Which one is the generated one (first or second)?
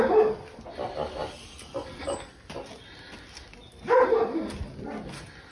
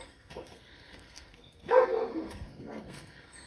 second